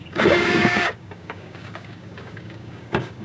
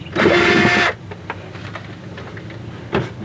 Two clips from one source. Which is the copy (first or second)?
first